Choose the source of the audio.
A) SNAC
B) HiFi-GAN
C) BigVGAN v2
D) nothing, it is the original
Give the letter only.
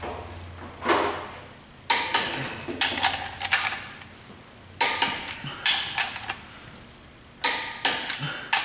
D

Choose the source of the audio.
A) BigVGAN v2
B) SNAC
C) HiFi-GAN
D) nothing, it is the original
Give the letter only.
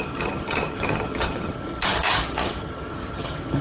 C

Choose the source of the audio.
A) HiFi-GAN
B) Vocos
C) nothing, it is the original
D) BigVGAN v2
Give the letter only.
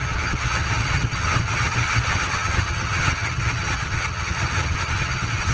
A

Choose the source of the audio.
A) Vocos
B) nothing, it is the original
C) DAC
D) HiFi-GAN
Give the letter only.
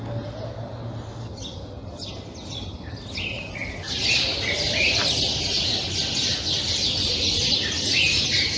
B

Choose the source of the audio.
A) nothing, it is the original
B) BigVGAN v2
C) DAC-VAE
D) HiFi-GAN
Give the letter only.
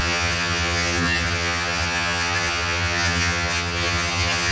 D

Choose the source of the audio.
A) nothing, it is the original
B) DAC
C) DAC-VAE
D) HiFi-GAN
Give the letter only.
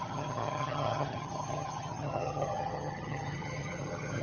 D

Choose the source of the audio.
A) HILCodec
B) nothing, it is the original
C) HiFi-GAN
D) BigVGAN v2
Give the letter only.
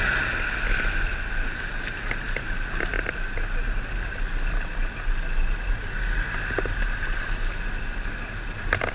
B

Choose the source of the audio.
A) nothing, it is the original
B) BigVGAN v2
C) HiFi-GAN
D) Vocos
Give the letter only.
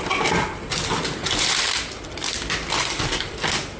A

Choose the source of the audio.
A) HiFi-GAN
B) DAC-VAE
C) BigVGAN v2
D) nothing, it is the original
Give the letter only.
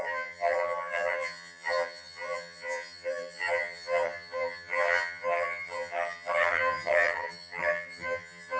A